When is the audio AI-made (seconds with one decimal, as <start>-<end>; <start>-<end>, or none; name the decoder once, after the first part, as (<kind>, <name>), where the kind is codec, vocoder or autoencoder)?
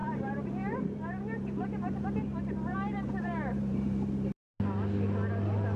0.0-4.5 (vocoder, BigVGAN v2)